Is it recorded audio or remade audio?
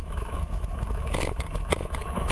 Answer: remade